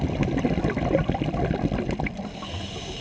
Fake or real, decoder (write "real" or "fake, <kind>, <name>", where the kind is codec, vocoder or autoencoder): real